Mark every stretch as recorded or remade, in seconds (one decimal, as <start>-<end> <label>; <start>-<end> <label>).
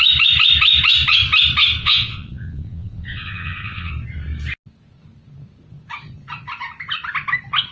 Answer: 0.0-1.8 recorded; 1.8-3.9 remade; 3.9-7.7 recorded